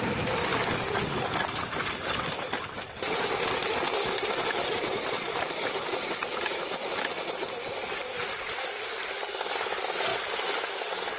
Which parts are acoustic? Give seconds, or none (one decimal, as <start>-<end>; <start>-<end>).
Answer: 0.0-11.2